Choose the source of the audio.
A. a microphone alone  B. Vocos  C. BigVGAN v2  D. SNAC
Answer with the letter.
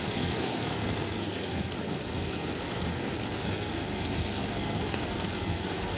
D